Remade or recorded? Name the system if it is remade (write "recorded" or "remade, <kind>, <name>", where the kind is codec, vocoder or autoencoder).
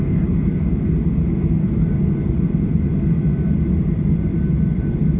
recorded